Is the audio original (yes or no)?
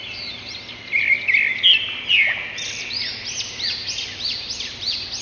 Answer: yes